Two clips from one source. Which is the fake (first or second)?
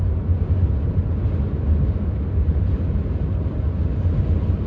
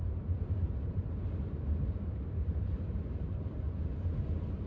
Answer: second